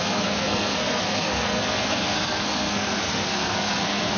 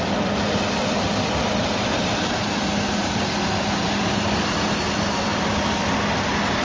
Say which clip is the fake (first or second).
first